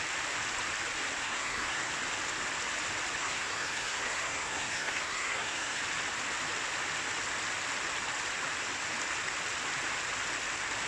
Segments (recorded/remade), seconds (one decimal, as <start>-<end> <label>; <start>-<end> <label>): 0.0-1.2 recorded; 1.2-1.9 remade; 1.9-3.2 recorded; 3.2-5.8 remade; 5.8-10.9 recorded